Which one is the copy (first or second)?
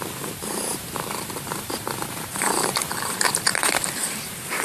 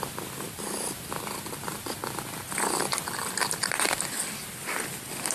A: first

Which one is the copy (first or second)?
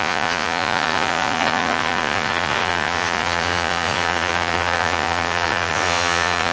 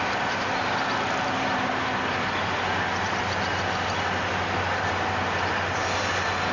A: first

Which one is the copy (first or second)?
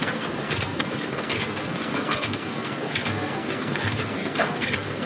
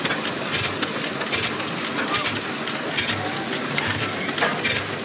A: first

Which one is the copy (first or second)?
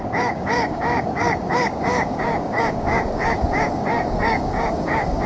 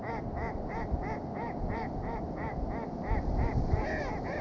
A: first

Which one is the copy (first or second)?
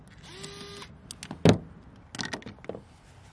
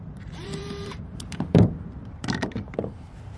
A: second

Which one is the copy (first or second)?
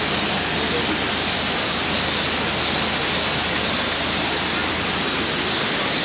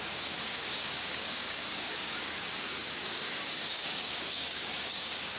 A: second